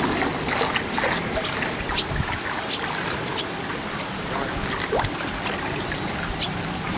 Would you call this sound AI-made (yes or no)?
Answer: no